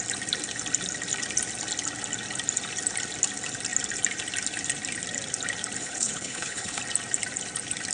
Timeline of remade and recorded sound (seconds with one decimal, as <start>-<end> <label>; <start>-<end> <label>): 0.0-5.8 recorded; 5.8-6.8 remade; 6.8-7.9 recorded